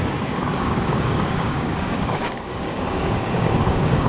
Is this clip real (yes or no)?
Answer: no